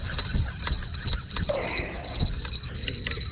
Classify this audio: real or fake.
real